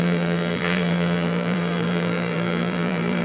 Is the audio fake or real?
fake